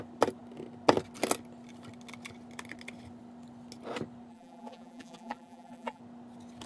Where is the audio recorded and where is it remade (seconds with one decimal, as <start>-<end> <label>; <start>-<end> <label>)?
0.0-4.3 recorded; 4.3-6.0 remade; 6.0-6.7 recorded

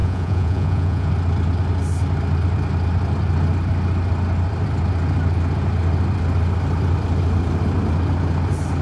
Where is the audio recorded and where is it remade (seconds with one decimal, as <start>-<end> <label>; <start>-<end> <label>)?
0.0-1.1 remade; 1.1-8.8 recorded

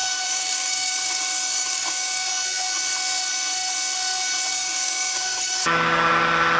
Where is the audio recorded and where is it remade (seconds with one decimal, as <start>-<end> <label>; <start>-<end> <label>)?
0.0-2.3 remade; 2.3-4.5 recorded; 4.5-6.1 remade; 6.1-6.6 recorded

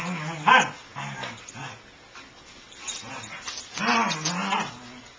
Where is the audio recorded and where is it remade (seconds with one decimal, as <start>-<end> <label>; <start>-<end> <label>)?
0.0-5.2 recorded

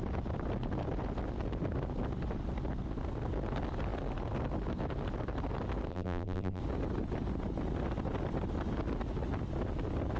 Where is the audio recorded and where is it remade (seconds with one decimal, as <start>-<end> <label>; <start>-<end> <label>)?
0.0-5.9 recorded; 5.9-6.6 remade; 6.6-10.2 recorded

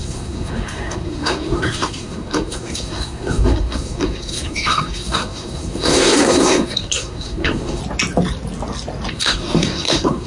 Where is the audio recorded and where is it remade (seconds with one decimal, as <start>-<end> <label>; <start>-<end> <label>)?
0.0-7.8 remade; 7.8-9.1 recorded; 9.1-10.3 remade